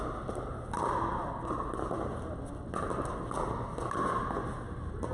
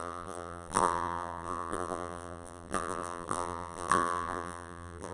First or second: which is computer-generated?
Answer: second